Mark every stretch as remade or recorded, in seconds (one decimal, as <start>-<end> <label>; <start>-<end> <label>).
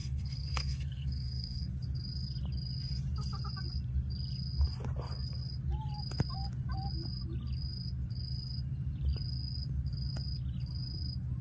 0.0-1.7 remade; 1.7-11.4 recorded